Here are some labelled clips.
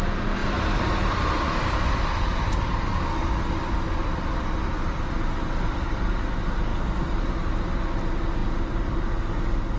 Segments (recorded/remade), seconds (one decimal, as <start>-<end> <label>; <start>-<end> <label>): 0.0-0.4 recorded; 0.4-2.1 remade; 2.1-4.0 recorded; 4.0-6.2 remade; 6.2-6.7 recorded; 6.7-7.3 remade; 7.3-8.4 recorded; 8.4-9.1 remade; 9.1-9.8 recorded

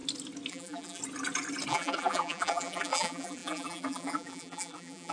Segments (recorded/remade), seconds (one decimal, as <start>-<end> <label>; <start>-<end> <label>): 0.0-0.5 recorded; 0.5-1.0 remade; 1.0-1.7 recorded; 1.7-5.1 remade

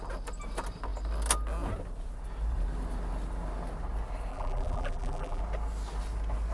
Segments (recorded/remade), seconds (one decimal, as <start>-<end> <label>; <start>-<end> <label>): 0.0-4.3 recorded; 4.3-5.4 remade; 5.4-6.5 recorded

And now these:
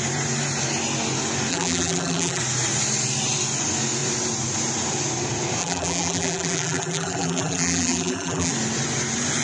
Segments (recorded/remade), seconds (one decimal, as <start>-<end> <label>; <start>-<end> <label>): 0.0-1.5 recorded; 1.5-2.4 remade; 2.4-5.6 recorded; 5.6-8.5 remade; 8.5-9.4 recorded

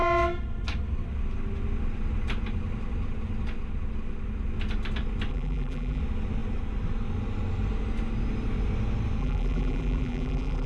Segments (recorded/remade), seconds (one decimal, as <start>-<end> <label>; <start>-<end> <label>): 0.0-5.3 recorded; 5.3-6.0 remade; 6.0-9.2 recorded; 9.2-10.7 remade

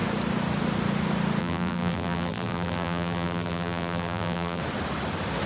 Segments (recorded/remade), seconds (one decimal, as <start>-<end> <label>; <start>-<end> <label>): 0.0-1.4 recorded; 1.4-4.6 remade; 4.6-5.5 recorded

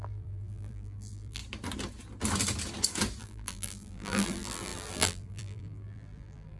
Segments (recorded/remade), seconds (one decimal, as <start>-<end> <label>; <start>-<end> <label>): 0.0-1.4 remade; 1.4-3.2 recorded; 3.2-6.6 remade

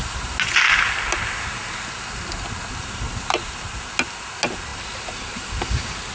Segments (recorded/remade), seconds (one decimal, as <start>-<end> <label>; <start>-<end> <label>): 0.0-6.1 recorded